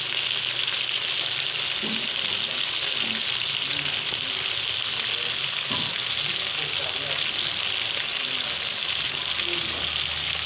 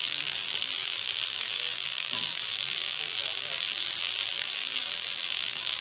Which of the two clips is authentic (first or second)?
first